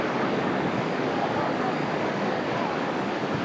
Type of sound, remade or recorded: remade